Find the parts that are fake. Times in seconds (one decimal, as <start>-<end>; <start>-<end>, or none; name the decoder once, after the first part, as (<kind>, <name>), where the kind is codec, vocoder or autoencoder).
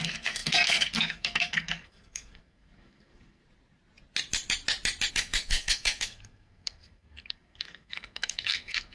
0.0-3.4 (codec, SNAC); 5.1-8.9